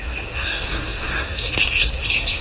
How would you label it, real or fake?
fake